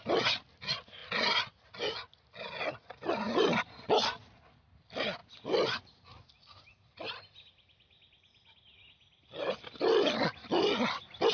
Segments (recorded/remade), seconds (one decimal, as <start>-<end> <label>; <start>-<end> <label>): 0.0-11.3 recorded